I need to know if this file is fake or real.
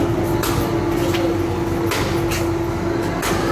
real